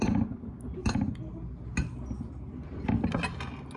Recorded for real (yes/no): yes